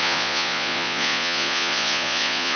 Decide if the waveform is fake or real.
fake